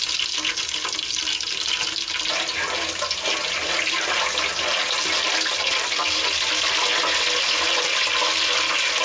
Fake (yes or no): no